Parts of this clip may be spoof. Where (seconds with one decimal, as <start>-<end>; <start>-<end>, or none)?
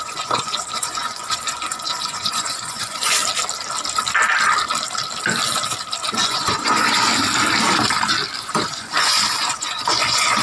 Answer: 0.0-3.2; 6.2-7.1; 8.4-10.4